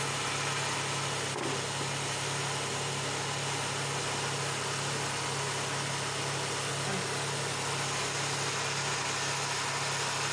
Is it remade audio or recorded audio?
recorded